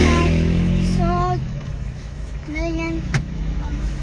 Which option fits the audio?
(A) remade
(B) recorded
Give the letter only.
A